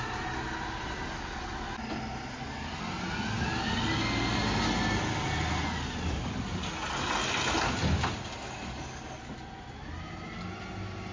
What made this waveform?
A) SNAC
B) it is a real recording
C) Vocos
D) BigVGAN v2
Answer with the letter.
B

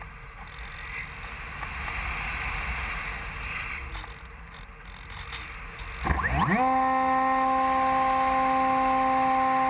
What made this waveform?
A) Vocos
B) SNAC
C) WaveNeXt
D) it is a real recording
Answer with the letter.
D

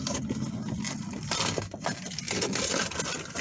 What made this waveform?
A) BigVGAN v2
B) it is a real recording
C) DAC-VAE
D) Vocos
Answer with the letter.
B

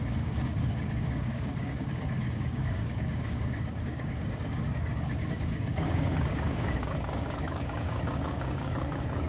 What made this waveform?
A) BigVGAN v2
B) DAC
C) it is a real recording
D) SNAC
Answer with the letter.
B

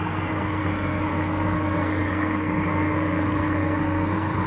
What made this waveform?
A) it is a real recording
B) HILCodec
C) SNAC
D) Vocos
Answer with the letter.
C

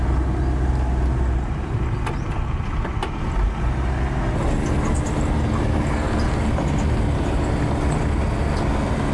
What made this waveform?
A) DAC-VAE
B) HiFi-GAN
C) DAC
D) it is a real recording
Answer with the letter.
D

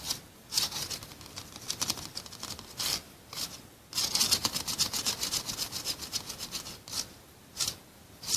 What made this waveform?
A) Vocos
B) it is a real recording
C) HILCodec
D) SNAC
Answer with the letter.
B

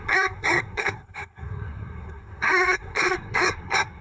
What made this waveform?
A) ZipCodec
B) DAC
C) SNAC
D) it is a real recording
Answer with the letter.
C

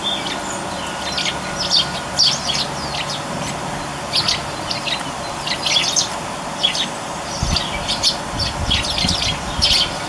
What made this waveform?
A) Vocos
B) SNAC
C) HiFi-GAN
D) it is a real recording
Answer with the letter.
D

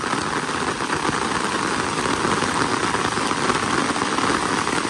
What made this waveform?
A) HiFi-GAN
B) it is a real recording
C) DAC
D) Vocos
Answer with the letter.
B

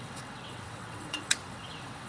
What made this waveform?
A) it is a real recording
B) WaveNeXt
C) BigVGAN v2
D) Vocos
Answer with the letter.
B